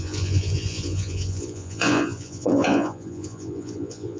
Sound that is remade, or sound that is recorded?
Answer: remade